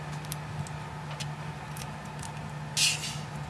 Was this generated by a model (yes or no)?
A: no